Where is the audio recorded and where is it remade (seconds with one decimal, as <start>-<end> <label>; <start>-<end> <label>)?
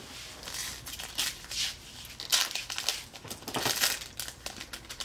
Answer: 0.0-5.0 recorded